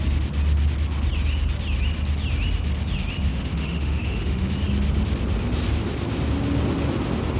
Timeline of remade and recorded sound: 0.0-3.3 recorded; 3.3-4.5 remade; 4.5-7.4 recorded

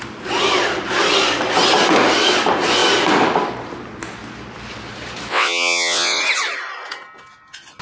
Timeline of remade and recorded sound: 0.0-5.3 recorded; 5.3-6.2 remade; 6.2-7.8 recorded

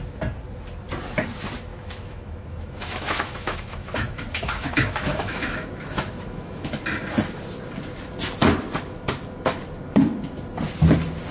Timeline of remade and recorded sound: 0.0-1.7 recorded; 1.7-6.8 remade; 6.8-11.3 recorded

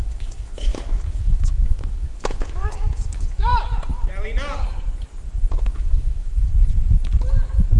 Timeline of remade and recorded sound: 0.0-3.5 remade; 3.5-5.6 recorded; 5.6-6.5 remade; 6.5-7.8 recorded

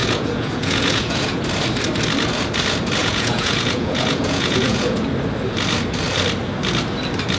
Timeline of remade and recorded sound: 0.0-1.4 remade; 1.4-3.0 recorded; 3.0-5.1 remade; 5.1-7.4 recorded